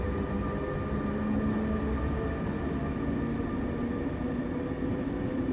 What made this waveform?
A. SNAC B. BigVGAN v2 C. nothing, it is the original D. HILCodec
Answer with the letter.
C